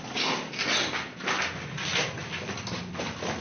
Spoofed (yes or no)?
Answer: no